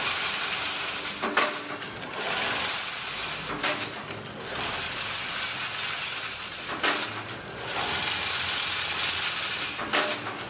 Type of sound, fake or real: real